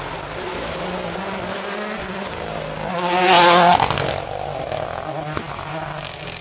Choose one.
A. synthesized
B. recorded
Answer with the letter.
B